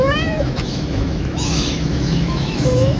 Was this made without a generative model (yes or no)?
no